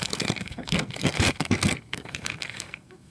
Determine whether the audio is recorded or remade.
remade